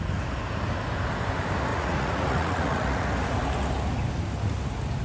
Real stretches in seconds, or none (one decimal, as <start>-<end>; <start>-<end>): 0.0-1.7; 3.1-5.0